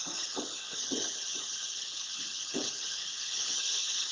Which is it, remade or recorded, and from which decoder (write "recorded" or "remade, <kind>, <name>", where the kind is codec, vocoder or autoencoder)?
remade, codec, HILCodec